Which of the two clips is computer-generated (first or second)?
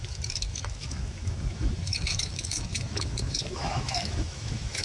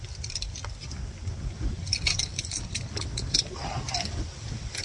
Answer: first